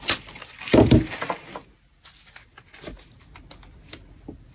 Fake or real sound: real